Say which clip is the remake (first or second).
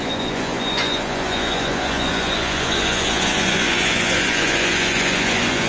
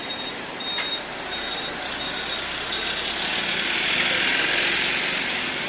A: first